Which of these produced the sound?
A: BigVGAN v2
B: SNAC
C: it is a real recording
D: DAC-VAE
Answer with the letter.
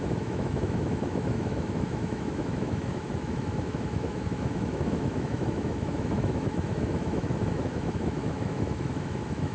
D